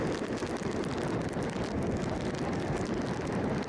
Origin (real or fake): real